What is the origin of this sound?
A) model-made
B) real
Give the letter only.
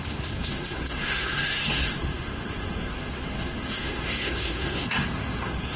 A